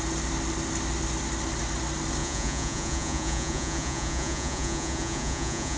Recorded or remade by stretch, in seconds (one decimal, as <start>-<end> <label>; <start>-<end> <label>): 0.0-2.2 recorded; 2.2-5.8 remade